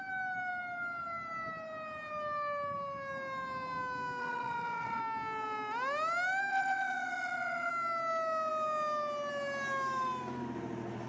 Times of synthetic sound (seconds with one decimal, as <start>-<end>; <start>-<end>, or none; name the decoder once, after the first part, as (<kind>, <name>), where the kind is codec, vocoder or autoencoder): 4.2-5.0 (vocoder, WaveNeXt); 6.5-7.7